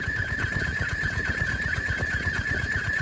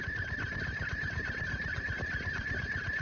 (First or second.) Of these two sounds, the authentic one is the second